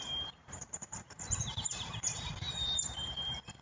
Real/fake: fake